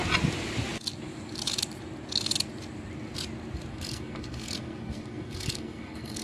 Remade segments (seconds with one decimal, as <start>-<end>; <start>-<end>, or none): 3.7-6.2